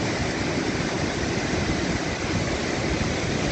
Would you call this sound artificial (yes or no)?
no